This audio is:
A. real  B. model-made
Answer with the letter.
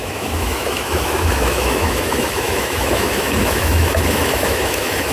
B